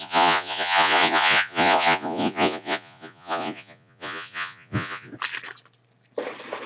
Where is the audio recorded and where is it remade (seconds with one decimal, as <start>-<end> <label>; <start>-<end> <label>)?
0.0-5.1 remade; 5.1-6.7 recorded